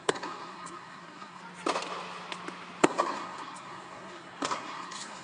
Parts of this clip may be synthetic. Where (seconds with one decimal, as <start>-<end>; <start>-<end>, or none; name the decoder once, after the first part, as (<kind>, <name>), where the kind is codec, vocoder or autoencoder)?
0.0-1.4 (codec, SNAC); 2.8-5.2